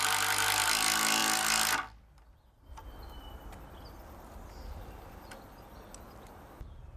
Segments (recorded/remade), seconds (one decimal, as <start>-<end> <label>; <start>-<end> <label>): 0.0-7.0 recorded